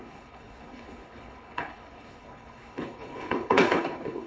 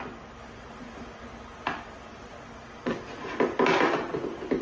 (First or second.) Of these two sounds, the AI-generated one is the first